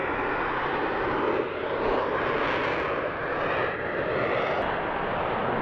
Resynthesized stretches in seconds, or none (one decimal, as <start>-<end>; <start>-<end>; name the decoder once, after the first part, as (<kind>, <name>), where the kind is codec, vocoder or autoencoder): none